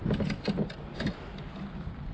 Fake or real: real